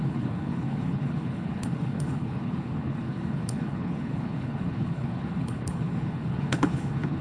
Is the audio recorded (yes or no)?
no